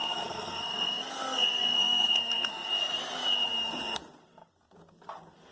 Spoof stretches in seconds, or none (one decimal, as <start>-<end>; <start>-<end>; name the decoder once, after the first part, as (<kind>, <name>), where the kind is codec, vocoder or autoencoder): 0.0-2.5 (codec, SNAC)